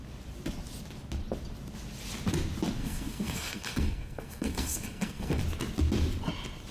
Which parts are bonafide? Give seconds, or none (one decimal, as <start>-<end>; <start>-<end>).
0.0-2.8; 5.4-6.7